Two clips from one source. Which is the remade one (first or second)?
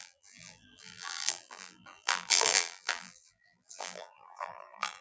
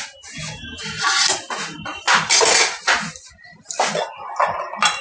first